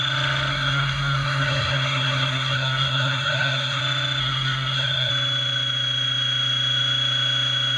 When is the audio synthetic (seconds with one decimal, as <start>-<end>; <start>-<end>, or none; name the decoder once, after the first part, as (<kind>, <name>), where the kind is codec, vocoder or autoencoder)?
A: 0.5-3.8 (codec, SNAC); 4.2-5.1

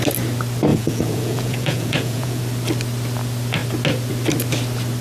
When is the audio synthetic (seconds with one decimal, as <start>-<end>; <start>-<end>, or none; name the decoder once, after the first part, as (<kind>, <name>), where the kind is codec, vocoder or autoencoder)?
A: 0.7-2.4 (vocoder, Vocos)

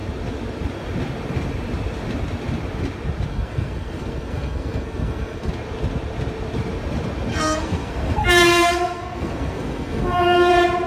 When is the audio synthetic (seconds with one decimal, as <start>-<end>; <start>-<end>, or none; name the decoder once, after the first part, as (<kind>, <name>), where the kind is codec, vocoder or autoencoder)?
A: 3.3-5.5 (codec, SNAC); 7.3-10.5